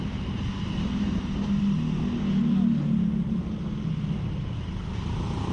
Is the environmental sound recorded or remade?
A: recorded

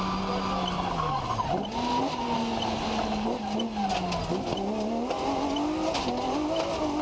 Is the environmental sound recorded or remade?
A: recorded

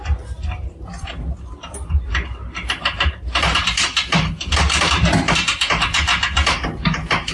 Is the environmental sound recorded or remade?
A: recorded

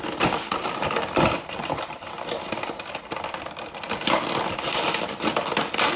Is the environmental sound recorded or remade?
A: recorded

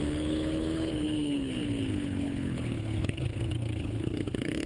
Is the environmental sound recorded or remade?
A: remade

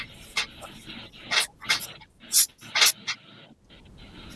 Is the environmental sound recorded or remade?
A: recorded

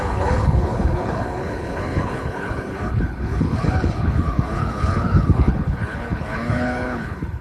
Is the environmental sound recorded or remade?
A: remade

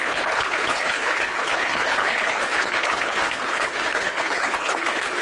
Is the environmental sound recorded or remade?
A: remade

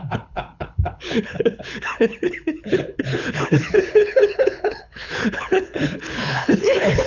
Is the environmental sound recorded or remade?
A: remade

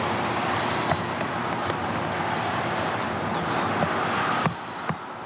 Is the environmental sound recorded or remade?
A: recorded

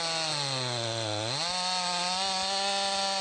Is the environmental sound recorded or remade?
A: recorded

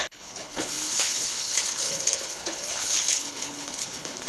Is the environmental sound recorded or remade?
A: remade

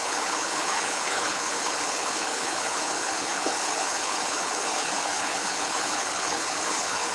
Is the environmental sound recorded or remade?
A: remade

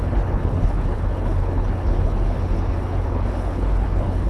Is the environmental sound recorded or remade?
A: remade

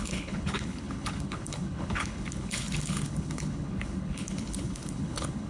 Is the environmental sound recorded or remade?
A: remade